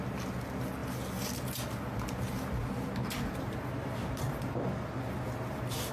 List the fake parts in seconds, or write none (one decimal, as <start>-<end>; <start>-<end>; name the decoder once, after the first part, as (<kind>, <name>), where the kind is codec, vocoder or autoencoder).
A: none